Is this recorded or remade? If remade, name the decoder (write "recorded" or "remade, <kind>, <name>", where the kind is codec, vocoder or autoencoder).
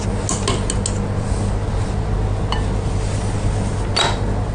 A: recorded